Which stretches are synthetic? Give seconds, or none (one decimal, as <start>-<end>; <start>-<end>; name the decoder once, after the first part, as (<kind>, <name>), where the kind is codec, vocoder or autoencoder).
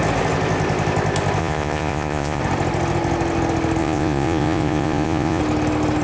1.4-2.4 (vocoder, Vocos); 3.8-5.4